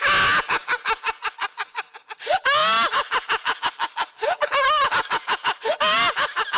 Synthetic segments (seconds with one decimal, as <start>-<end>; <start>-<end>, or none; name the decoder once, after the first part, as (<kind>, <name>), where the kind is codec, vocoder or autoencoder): none